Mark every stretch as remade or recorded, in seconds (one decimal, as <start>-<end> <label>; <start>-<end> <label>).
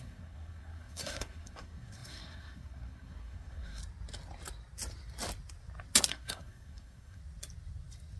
0.0-3.8 remade; 3.8-6.1 recorded; 6.1-7.2 remade; 7.2-8.2 recorded